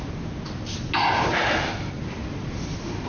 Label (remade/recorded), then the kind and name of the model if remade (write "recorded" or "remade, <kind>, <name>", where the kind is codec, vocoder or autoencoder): recorded